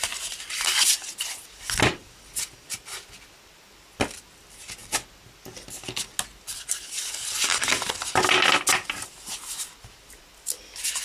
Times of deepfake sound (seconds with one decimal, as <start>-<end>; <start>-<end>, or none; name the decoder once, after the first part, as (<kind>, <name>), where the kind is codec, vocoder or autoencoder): none